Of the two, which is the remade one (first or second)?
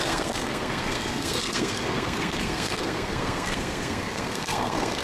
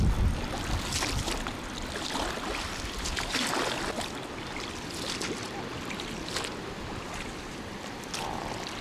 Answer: first